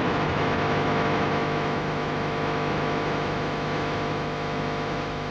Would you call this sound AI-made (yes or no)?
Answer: yes